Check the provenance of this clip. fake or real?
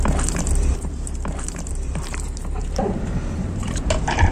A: fake